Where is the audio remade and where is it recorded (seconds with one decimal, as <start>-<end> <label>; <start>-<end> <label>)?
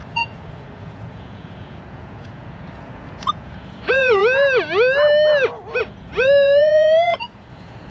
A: 0.0-4.2 remade; 4.2-5.8 recorded; 5.8-7.9 remade